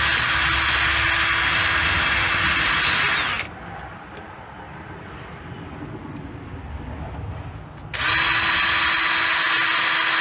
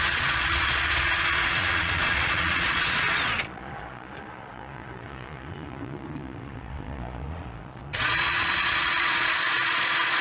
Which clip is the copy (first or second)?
second